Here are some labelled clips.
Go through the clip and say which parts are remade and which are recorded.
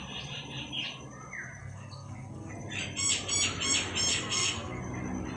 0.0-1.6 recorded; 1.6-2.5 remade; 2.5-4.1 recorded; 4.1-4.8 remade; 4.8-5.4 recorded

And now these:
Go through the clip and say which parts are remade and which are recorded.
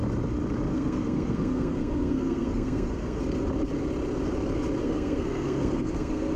0.0-0.7 recorded; 0.7-3.2 remade; 3.2-4.8 recorded; 4.8-6.4 remade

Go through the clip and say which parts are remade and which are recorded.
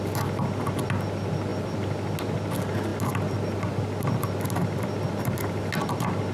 0.0-6.3 recorded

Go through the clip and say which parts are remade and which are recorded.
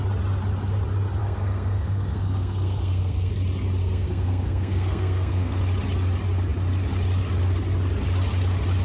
0.0-1.2 recorded; 1.2-3.3 remade; 3.3-3.8 recorded; 3.8-5.6 remade; 5.6-8.8 recorded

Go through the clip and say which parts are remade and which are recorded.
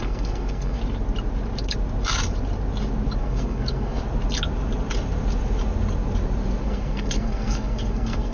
0.0-0.8 remade; 0.8-3.2 recorded; 3.2-4.0 remade; 4.0-6.6 recorded; 6.6-8.3 remade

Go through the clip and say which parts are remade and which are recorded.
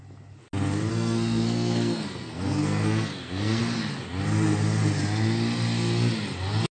0.0-0.9 recorded; 0.9-3.6 remade; 3.6-6.7 recorded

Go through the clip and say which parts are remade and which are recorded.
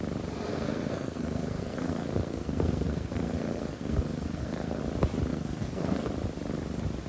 0.0-0.5 recorded; 0.5-4.8 remade; 4.8-5.3 recorded; 5.3-6.1 remade; 6.1-7.1 recorded